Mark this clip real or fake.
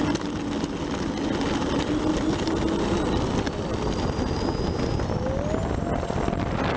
real